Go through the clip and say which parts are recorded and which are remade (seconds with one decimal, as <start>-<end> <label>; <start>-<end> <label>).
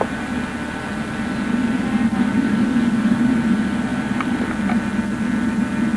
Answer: 0.0-2.3 recorded; 2.3-3.3 remade; 3.3-6.0 recorded